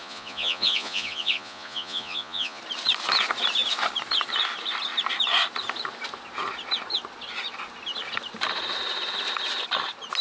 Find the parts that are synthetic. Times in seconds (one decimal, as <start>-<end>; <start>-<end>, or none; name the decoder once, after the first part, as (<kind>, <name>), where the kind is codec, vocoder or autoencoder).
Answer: 0.0-2.6 (vocoder, Vocos)